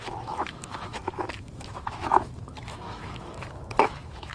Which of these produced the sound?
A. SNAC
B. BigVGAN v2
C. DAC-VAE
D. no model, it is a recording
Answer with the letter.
C